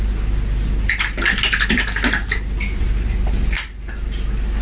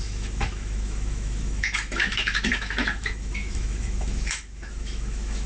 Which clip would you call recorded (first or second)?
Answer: first